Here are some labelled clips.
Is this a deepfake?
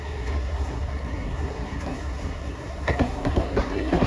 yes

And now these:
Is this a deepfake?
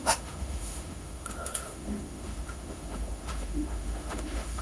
yes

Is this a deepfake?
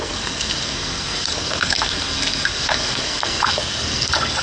yes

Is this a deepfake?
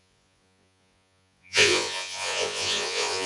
yes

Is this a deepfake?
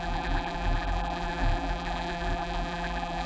yes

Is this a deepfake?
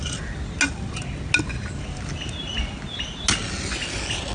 no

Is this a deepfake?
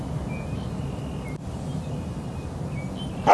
no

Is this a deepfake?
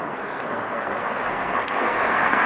yes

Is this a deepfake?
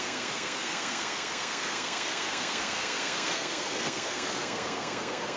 yes